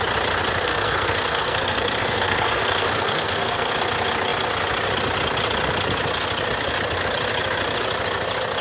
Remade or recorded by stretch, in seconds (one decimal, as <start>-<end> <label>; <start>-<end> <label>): 0.0-0.5 recorded; 0.5-3.7 remade; 3.7-8.6 recorded